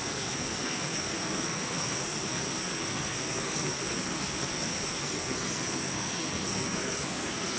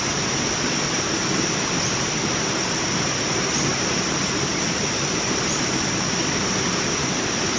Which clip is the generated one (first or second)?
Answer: first